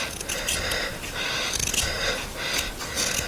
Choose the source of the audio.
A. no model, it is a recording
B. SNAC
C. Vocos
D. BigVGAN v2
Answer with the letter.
A